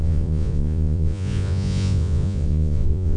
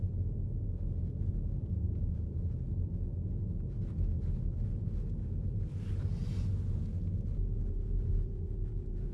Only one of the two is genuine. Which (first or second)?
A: second